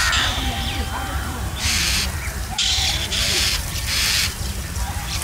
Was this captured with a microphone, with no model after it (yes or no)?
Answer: no